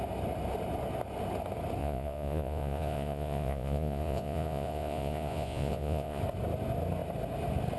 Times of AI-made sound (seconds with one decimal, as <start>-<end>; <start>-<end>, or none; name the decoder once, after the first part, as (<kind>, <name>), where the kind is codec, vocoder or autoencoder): 1.8-6.2 (vocoder, Vocos)